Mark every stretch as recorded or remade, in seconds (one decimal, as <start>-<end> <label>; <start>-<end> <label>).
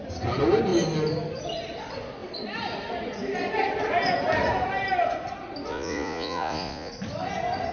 0.0-5.7 recorded; 5.7-6.9 remade; 6.9-7.7 recorded